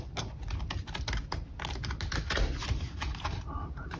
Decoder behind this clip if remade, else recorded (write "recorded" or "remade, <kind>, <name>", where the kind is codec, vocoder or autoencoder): recorded